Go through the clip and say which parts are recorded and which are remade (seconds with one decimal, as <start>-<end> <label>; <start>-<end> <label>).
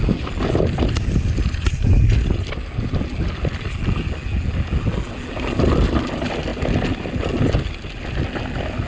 0.0-8.9 recorded